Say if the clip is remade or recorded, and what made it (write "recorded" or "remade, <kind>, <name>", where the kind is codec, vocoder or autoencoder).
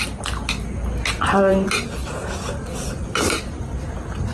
recorded